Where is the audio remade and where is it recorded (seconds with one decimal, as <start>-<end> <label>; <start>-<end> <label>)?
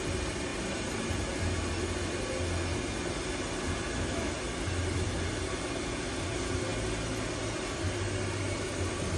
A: 0.0-9.2 recorded